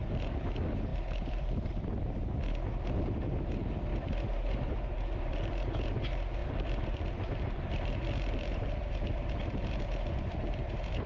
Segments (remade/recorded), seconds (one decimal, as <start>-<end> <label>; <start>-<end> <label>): 0.0-0.9 recorded; 0.9-2.5 remade; 2.5-6.4 recorded; 6.4-8.9 remade; 8.9-11.1 recorded